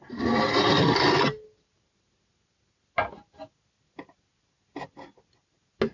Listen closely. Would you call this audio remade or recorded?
recorded